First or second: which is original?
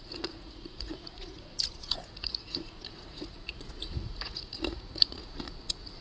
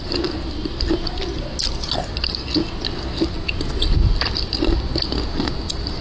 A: second